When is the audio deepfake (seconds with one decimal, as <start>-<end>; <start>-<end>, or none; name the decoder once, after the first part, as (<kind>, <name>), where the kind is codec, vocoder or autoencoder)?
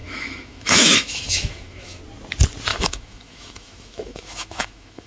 0.0-2.0 (autoencoder, DAC-VAE); 2.7-5.1